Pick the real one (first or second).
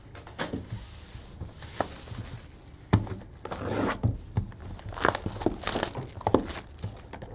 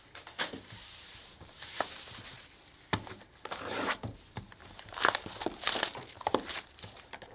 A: first